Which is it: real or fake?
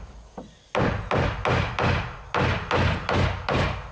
real